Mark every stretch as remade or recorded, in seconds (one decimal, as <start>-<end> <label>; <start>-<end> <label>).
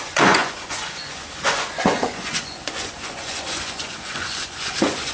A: 0.0-5.1 remade